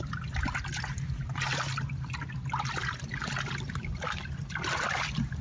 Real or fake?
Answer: real